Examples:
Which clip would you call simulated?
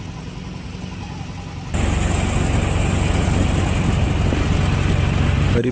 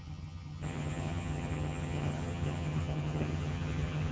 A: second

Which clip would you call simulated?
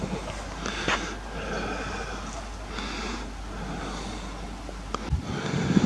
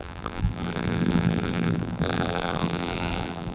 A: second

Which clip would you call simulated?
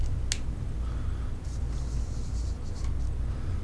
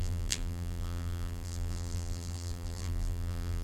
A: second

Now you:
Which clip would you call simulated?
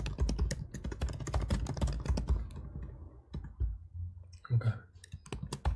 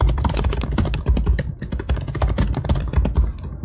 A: second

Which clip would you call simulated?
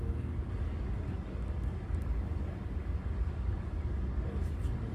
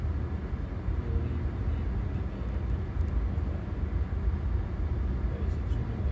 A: first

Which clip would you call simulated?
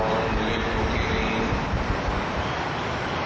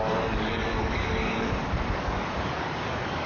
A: second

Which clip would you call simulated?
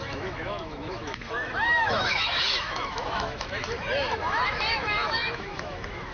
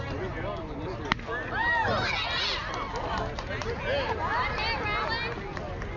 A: first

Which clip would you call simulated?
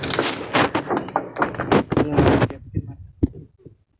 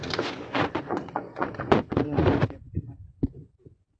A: second